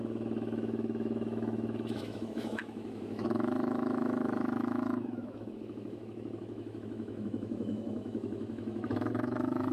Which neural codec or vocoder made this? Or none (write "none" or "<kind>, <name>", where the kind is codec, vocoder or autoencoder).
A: autoencoder, DAC-VAE